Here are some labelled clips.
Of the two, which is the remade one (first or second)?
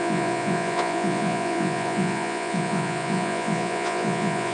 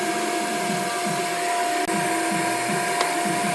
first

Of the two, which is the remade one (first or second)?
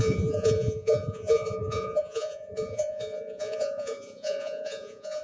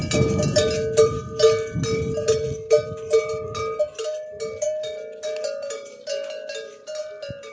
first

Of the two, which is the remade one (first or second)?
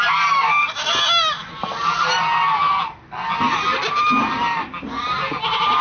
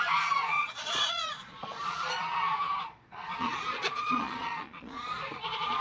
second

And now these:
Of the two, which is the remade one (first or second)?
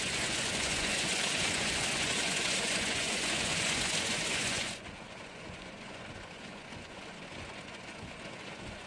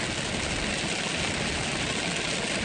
first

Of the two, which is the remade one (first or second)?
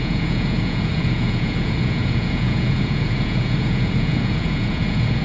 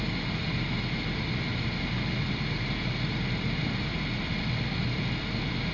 first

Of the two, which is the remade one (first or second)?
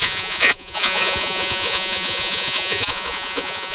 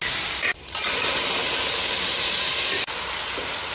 first